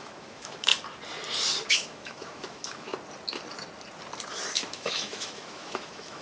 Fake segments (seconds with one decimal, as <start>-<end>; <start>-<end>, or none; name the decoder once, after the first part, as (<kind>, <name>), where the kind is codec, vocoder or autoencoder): 0.0-0.7 (autoencoder, DAC-VAE); 1.7-2.9; 4.5-6.2